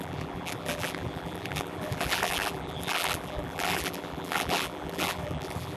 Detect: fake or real fake